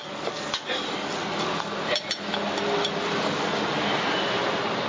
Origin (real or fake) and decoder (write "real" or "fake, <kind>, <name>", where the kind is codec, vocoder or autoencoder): real